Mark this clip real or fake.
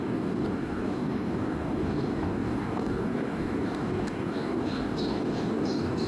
fake